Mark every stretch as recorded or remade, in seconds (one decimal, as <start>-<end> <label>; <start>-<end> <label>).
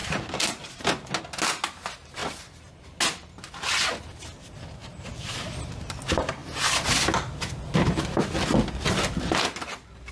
0.0-4.8 recorded; 4.8-6.0 remade; 6.0-10.1 recorded